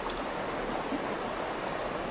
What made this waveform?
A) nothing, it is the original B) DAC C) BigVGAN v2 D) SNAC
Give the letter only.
A